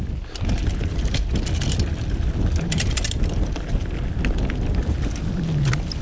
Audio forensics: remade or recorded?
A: recorded